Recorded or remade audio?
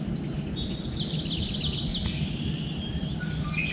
recorded